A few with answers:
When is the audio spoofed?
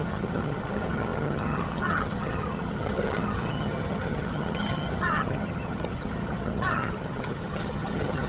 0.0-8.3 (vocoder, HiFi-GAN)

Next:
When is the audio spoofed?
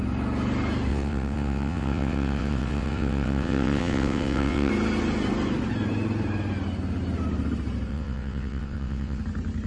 0.9-4.7 (vocoder, WaveNeXt); 7.9-9.2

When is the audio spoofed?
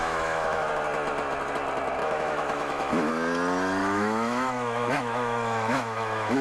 0.0-0.7 (autoencoder, DAC-VAE); 2.0-3.1; 3.8-6.4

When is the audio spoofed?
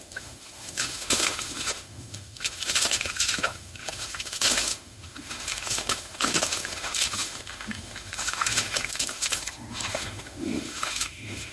0.0-11.5 (autoencoder, DAC-VAE)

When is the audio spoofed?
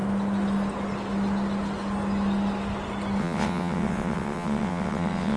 3.2-5.4 (vocoder, WaveNeXt)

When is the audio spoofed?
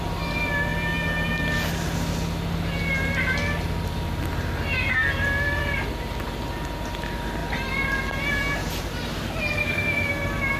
none